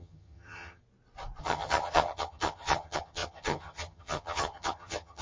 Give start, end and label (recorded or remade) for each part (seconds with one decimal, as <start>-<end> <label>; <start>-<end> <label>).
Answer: 0.0-0.8 remade; 0.8-1.4 recorded; 1.4-5.2 remade